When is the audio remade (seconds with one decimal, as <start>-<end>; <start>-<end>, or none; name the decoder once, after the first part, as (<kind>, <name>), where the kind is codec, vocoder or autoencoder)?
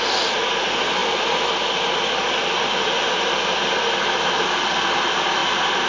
none